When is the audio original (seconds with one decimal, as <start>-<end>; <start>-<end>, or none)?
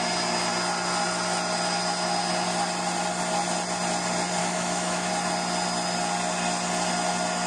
0.0-4.4; 5.1-7.5